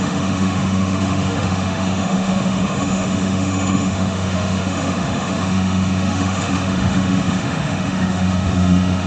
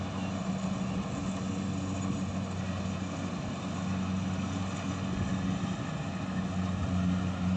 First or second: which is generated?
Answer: first